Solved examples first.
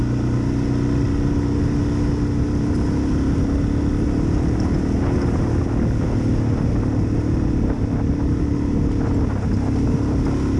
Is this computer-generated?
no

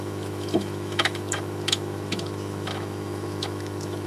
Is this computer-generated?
yes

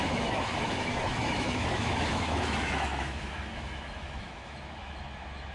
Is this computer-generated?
yes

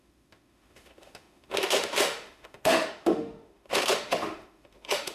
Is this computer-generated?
yes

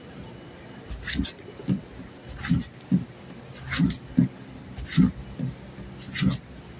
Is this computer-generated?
no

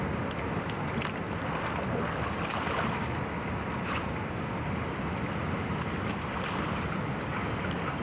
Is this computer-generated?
no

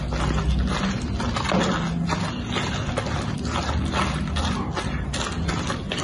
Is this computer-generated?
no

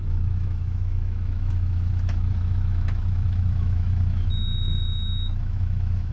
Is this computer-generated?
yes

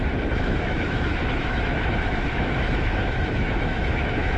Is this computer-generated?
yes